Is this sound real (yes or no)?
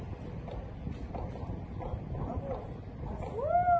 yes